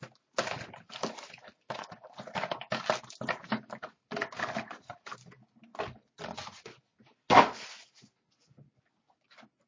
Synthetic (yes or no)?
no